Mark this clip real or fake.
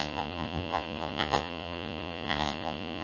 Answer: fake